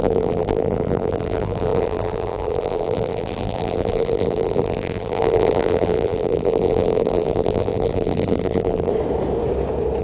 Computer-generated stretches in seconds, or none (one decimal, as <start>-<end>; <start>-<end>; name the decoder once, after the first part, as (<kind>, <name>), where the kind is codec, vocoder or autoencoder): 0.0-8.9 (vocoder, BigVGAN v2)